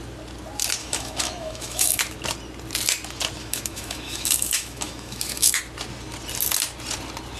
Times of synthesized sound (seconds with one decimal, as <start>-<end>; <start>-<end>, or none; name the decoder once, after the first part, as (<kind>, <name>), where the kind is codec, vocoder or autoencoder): 0.8-2.0 (autoencoder, DAC-VAE); 3.4-5.6